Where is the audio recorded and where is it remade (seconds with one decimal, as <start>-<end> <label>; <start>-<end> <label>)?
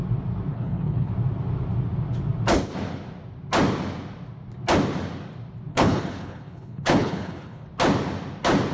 0.0-0.5 recorded; 0.5-1.1 remade; 1.1-5.7 recorded; 5.7-7.7 remade; 7.7-8.7 recorded